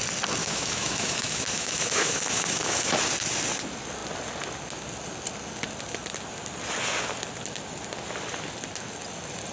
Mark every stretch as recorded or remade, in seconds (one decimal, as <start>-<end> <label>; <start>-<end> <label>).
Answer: 0.0-0.4 recorded; 0.4-3.0 remade; 3.0-9.5 recorded